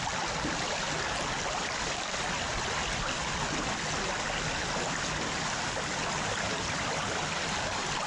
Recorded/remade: recorded